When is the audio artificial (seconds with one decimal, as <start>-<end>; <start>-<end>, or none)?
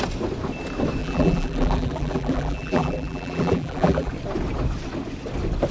1.0-4.1